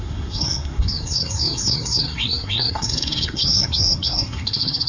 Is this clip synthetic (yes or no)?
yes